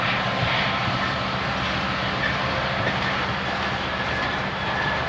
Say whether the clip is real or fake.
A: real